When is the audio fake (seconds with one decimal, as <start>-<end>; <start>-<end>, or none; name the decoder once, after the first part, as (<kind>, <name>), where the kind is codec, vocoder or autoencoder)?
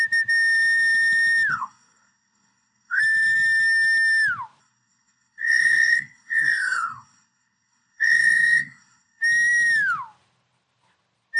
1.5-3.0 (codec, SNAC); 4.6-9.2